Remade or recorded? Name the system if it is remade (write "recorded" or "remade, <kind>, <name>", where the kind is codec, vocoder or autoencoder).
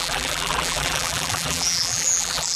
remade, vocoder, BigVGAN v2